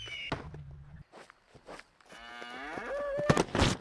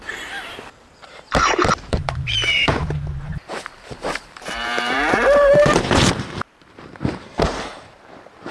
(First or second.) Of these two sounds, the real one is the first